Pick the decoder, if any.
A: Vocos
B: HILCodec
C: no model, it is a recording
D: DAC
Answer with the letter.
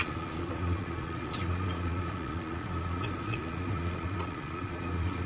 A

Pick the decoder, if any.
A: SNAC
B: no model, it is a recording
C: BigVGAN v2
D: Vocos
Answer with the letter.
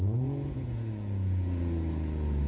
D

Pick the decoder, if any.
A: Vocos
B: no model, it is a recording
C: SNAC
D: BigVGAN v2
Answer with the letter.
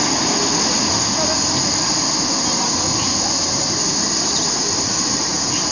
B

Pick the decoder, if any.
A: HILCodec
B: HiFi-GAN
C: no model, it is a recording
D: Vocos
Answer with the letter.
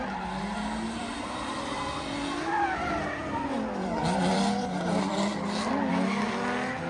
C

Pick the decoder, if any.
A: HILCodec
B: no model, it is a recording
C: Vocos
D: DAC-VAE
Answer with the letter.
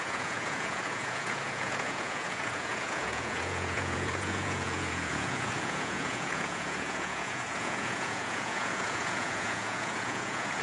C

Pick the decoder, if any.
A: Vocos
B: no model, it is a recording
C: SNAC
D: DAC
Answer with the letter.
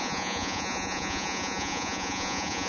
A